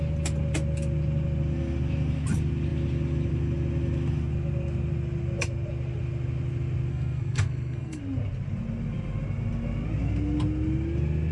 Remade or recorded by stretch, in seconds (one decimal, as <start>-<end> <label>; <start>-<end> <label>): 0.0-6.9 recorded; 6.9-8.0 remade; 8.0-11.3 recorded